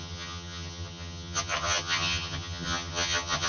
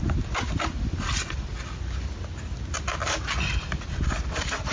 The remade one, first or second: first